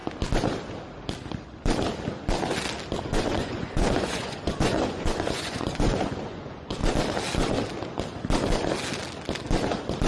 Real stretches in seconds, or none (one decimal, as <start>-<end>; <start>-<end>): 0.0-3.0; 6.8-10.1